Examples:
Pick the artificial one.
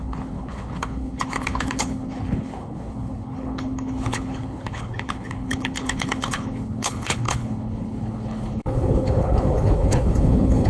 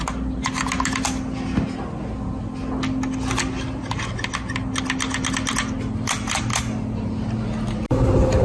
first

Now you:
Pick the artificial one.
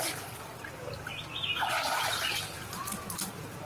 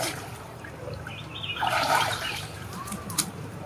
second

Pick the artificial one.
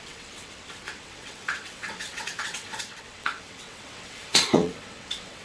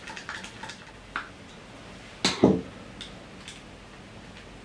first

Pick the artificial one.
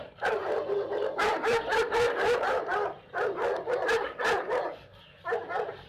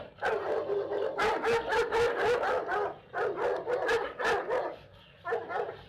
first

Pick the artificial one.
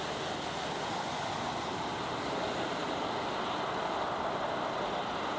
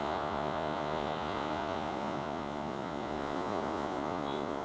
second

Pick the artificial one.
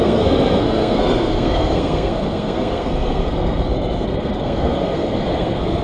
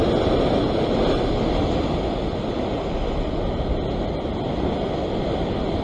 first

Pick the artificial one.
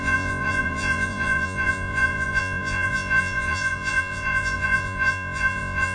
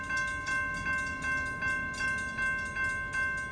first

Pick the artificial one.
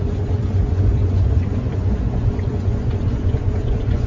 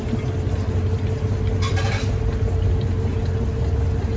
first